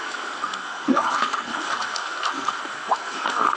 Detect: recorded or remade remade